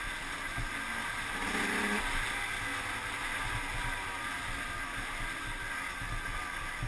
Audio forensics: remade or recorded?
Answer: recorded